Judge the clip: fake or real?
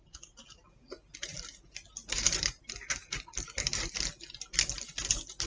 real